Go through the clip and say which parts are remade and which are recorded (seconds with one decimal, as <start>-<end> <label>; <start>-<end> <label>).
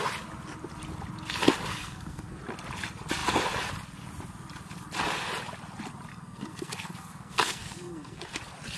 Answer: 0.0-1.8 recorded; 1.8-2.4 remade; 2.4-6.1 recorded; 6.1-8.4 remade; 8.4-8.8 recorded